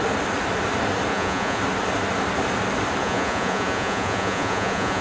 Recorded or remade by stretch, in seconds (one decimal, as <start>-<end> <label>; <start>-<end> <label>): 0.0-1.1 recorded; 1.1-1.6 remade; 1.6-3.0 recorded; 3.0-5.0 remade

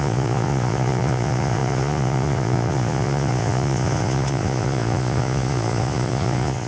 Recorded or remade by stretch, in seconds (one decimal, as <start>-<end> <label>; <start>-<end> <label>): 0.0-6.7 remade

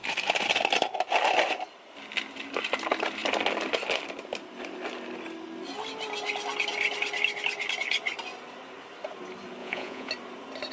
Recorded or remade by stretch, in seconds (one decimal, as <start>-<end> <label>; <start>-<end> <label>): 0.0-9.6 recorded; 9.6-10.1 remade; 10.1-10.7 recorded

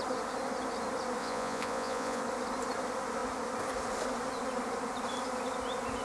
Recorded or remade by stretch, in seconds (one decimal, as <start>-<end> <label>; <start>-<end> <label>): 0.0-1.2 recorded; 1.2-2.2 remade; 2.2-6.0 recorded

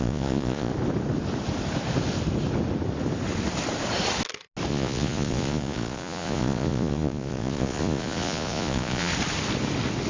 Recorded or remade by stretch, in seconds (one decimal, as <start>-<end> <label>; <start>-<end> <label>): 0.0-0.7 remade; 0.7-4.7 recorded; 4.7-9.1 remade; 9.1-10.1 recorded

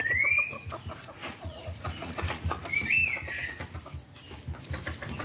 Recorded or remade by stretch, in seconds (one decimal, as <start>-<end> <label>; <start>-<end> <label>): 0.0-1.0 recorded; 1.0-2.6 remade; 2.6-5.2 recorded

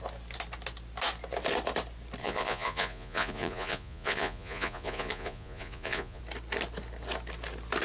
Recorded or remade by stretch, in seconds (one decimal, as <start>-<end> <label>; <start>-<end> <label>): 0.0-2.2 recorded; 2.2-6.2 remade; 6.2-7.8 recorded

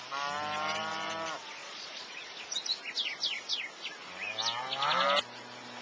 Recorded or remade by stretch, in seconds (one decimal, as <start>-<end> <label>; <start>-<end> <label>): 0.0-1.6 recorded; 1.6-2.3 remade; 2.3-5.8 recorded